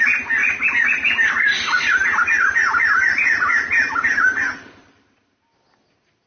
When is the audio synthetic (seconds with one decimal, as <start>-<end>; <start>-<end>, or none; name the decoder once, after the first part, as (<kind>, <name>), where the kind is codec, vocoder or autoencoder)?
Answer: 0.4-1.3 (vocoder, BigVGAN v2); 2.0-4.9